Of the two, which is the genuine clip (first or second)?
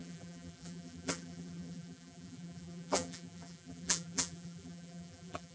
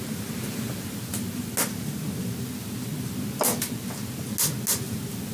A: second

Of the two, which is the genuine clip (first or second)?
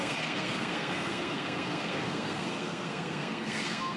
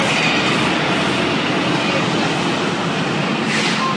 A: second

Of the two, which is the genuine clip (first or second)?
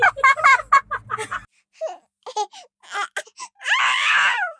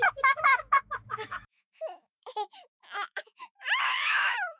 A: first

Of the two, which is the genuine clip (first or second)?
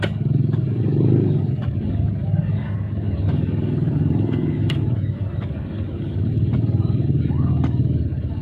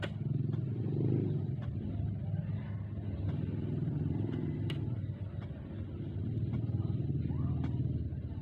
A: second